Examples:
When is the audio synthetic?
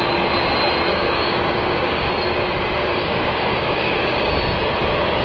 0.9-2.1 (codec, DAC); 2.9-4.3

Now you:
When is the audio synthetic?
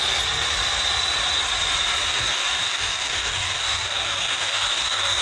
2.1-5.2 (codec, DAC)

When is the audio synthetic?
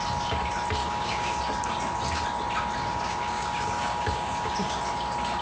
0.8-1.4 (codec, DAC); 2.9-4.8